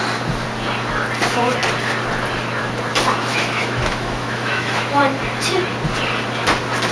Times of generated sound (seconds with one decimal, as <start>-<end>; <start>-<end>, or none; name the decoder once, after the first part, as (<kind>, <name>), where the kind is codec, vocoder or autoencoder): 3.3-5.0 (autoencoder, DAC-VAE)